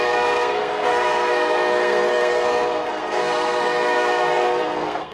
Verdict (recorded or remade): remade